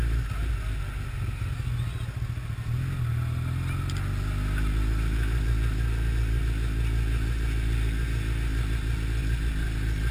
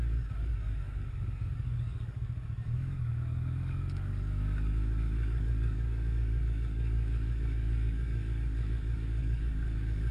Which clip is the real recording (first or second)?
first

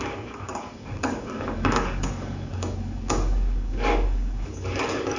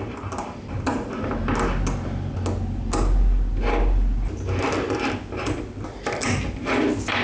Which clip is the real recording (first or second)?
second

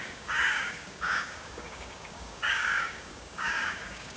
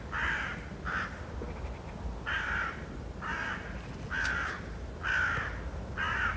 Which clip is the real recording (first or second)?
second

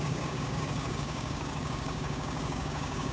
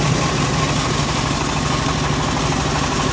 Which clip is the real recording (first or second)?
second